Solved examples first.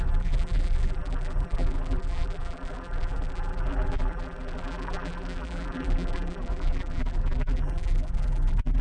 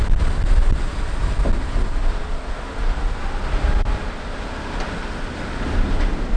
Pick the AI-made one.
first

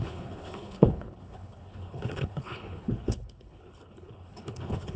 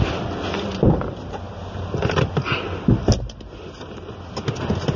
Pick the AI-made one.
first